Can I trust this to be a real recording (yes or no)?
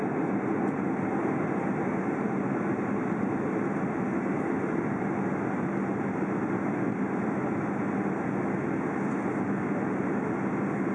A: yes